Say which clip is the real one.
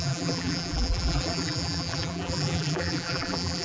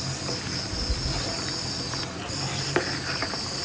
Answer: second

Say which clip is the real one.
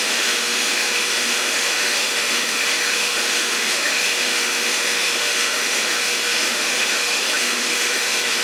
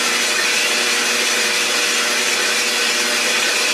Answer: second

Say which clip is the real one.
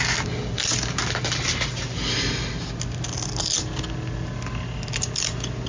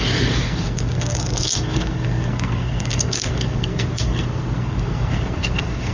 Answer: first